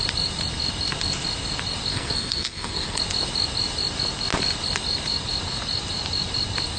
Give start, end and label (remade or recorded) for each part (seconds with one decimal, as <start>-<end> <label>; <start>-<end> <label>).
0.0-1.9 recorded; 1.9-3.0 remade; 3.0-6.8 recorded